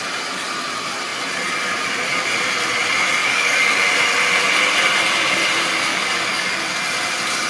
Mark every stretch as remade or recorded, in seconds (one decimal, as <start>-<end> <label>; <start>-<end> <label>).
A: 0.0-3.2 recorded; 3.2-3.8 remade; 3.8-5.9 recorded; 5.9-6.7 remade; 6.7-7.5 recorded